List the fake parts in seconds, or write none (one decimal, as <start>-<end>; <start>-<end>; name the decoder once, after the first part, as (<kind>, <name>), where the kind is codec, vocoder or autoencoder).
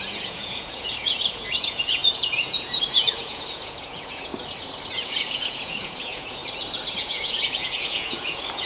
0.0-4.3 (vocoder, Vocos); 4.9-6.4; 7.0-8.7